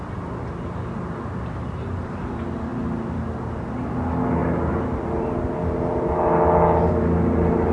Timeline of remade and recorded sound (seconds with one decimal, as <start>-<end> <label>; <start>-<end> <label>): 0.0-7.7 recorded